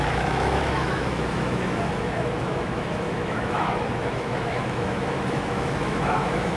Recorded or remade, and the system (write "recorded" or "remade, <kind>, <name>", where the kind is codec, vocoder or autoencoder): remade, autoencoder, DAC-VAE